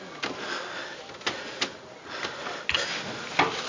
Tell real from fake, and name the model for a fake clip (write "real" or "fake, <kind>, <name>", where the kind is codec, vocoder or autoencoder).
real